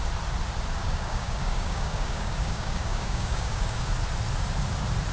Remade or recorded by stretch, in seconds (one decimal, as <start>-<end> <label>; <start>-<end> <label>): 0.0-0.8 recorded; 0.8-3.9 remade; 3.9-5.1 recorded